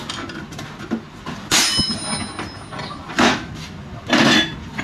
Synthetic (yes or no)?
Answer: no